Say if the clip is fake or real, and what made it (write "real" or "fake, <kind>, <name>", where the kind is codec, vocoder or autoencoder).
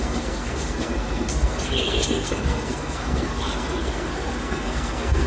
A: fake, codec, SNAC